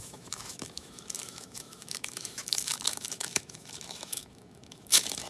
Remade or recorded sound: remade